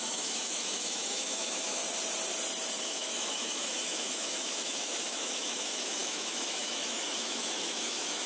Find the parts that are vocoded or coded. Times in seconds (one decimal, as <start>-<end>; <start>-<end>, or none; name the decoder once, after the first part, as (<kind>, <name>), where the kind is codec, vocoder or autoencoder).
0.0-1.8 (autoencoder, DAC-VAE); 2.8-8.3